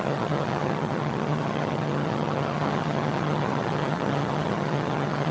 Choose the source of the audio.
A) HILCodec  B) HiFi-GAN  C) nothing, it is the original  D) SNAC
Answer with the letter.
B